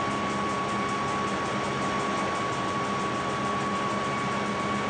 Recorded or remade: recorded